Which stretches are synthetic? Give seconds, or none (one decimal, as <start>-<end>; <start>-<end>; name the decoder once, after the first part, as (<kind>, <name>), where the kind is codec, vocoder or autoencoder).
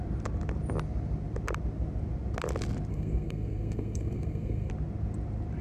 2.9-4.7 (codec, SNAC)